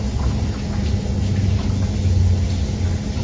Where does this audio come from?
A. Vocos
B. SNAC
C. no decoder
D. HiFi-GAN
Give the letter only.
C